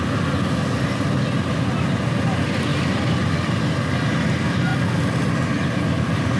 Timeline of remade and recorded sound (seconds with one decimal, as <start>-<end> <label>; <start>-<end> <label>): 0.0-6.4 recorded